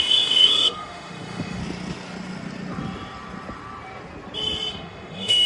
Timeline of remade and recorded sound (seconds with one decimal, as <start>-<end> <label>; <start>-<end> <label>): 0.0-1.6 remade; 1.6-4.7 recorded; 4.7-5.5 remade